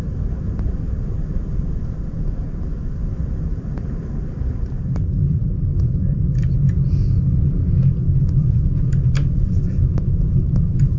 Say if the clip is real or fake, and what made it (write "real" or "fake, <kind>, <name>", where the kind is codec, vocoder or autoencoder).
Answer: fake, vocoder, BigVGAN v2